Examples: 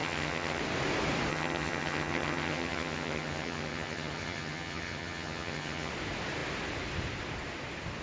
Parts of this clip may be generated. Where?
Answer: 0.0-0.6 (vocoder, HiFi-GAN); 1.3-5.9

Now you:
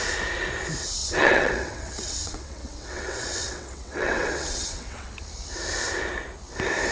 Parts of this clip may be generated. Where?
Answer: 1.0-5.1 (vocoder, WaveNeXt)

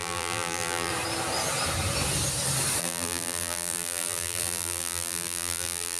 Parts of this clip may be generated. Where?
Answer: 0.0-0.9 (vocoder, BigVGAN v2); 2.8-6.0

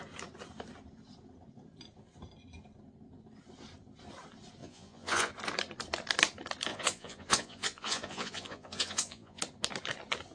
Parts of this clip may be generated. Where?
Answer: 4.6-5.3 (vocoder, Vocos); 6.7-9.4

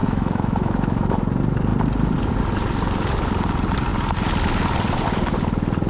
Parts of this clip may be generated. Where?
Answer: 0.0-1.2 (autoencoder, DAC-VAE)